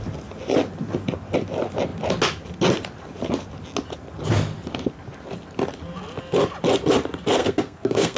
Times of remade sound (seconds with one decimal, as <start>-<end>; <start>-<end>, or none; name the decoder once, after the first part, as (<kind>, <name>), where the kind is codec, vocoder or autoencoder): 7.4-8.2 (codec, SNAC)